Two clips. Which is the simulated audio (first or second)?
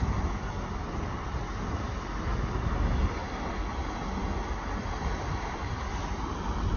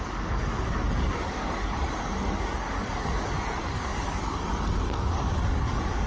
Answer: second